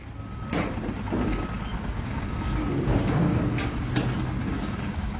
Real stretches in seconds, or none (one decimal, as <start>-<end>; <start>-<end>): 0.0-1.7; 3.8-4.4